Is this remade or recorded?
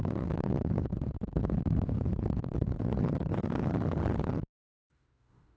remade